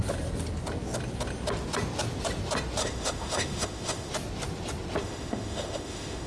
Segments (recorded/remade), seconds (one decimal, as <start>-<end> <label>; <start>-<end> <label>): 0.0-2.8 recorded; 2.8-4.1 remade; 4.1-5.0 recorded; 5.0-6.3 remade